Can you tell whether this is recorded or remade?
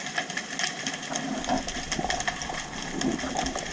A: recorded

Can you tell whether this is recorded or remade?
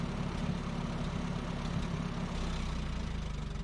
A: recorded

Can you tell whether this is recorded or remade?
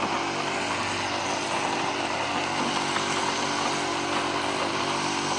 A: recorded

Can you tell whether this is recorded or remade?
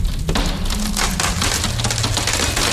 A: recorded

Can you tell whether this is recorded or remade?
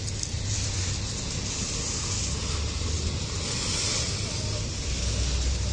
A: recorded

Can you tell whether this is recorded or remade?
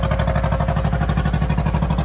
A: recorded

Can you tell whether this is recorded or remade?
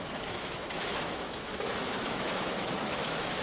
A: remade